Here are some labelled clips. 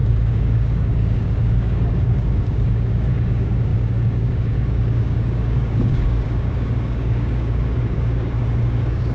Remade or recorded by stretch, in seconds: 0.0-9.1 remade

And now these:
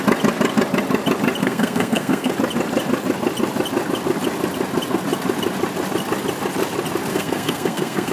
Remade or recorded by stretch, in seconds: 0.0-1.4 recorded; 1.4-2.3 remade; 2.3-7.1 recorded; 7.1-8.1 remade